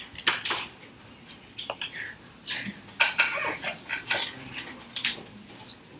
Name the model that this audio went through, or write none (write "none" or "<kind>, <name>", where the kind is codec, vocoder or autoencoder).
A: none